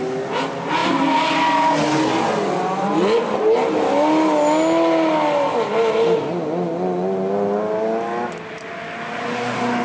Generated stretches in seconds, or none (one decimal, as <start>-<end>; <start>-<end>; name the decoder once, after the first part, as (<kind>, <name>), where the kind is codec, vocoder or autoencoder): none